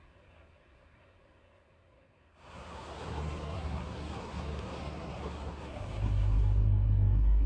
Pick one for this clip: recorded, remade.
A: remade